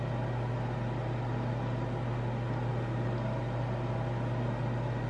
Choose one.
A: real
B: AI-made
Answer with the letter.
A